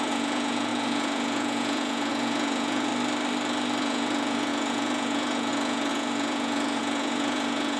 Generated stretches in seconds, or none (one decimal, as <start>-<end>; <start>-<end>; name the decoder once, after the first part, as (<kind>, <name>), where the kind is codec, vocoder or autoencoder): 0.0-2.9 (vocoder, Vocos); 3.8-7.8